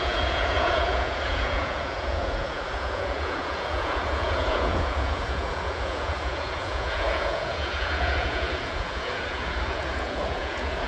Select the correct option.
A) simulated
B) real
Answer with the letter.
A